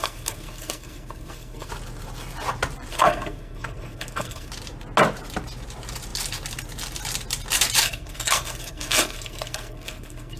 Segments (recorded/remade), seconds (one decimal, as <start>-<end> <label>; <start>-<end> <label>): 0.0-1.7 remade; 1.7-2.9 recorded; 2.9-4.5 remade; 4.5-7.8 recorded; 7.8-10.4 remade